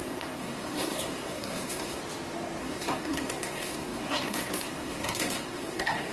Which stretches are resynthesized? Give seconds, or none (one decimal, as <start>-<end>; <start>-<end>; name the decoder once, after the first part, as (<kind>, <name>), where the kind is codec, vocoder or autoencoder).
0.0-2.0 (codec, SNAC); 2.6-6.1